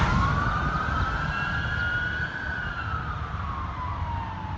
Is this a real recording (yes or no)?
yes